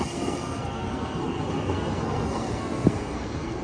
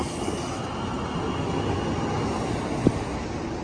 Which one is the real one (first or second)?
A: second